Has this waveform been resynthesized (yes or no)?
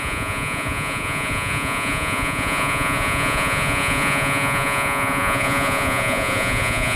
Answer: yes